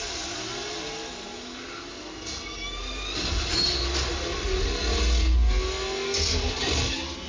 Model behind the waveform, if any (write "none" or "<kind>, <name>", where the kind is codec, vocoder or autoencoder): none